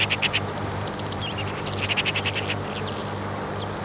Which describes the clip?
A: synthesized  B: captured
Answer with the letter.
B